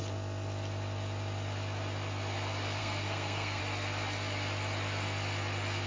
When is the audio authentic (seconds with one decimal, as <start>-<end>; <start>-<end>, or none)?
0.0-2.8; 3.6-5.9